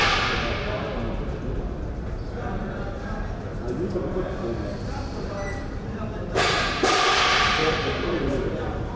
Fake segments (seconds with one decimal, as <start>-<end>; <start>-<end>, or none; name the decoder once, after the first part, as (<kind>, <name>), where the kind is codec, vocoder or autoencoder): 5.3-9.0 (vocoder, BigVGAN v2)